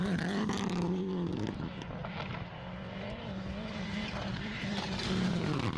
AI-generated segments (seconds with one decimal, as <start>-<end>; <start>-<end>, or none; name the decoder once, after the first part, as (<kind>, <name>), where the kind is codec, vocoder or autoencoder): 0.0-5.8 (vocoder, BigVGAN v2)